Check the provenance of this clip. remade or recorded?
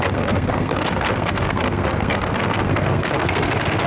remade